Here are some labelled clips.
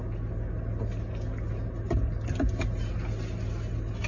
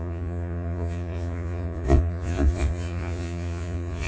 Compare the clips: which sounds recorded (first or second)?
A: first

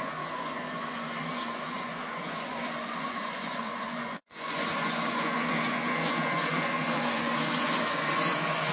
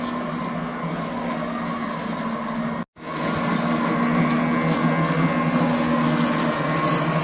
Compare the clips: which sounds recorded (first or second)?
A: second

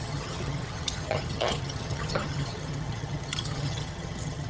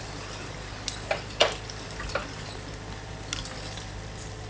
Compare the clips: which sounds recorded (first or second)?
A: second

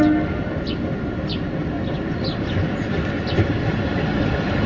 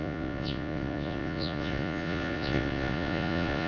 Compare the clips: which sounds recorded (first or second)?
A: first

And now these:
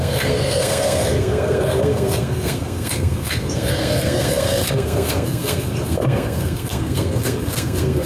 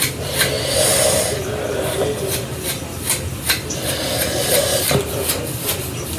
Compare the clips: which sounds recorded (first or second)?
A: second